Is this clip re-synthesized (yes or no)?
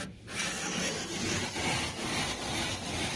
no